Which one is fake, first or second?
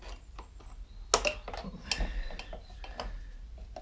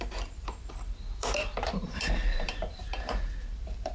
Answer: second